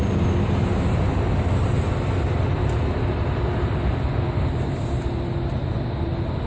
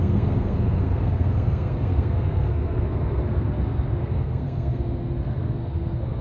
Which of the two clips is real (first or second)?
first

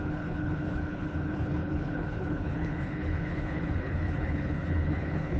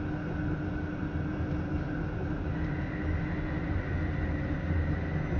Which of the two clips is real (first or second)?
second